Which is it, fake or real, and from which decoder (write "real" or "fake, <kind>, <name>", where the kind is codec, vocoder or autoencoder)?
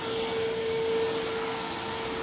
real